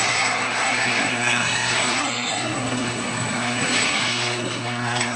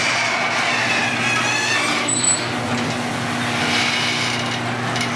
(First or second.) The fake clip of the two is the first